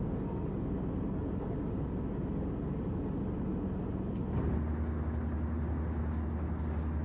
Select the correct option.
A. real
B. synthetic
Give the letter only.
A